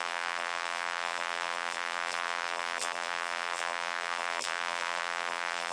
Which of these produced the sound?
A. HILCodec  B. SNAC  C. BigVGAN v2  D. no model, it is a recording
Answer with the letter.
C